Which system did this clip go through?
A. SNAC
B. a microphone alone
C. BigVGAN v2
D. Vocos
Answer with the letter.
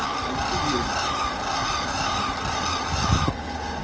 B